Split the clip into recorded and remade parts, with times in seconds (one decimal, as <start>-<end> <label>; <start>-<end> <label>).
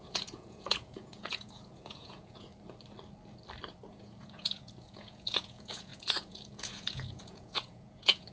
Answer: 0.0-2.5 remade; 2.5-3.9 recorded; 3.9-8.3 remade